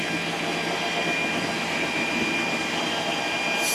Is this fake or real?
real